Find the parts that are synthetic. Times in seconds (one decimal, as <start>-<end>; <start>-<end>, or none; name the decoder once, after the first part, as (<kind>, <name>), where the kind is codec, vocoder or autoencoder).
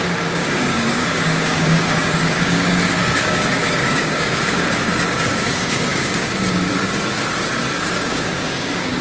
0.0-6.7 (codec, DAC); 7.8-9.0